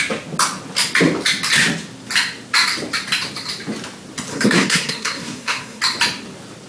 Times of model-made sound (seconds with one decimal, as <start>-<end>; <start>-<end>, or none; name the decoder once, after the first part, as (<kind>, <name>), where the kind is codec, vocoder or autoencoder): 4.3-5.8 (codec, SNAC)